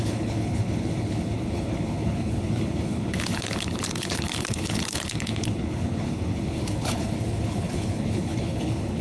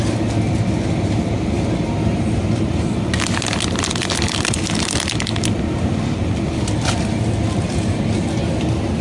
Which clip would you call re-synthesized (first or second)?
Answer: first